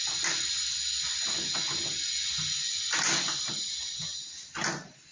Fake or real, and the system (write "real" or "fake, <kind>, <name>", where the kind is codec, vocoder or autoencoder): real